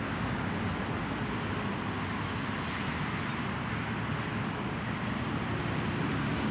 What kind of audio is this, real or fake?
real